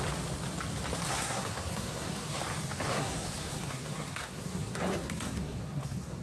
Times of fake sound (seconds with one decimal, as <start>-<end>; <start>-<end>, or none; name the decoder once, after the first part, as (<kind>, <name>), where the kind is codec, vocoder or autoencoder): 1.1-2.4 (codec, SNAC); 2.9-6.2